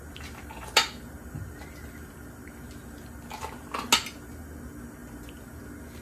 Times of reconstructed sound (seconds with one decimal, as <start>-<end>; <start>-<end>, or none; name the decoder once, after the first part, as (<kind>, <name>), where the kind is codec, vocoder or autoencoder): none